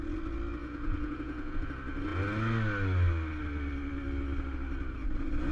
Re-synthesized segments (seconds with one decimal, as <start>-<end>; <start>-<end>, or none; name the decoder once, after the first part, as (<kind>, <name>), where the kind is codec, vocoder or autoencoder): 0.6-1.7 (vocoder, Vocos)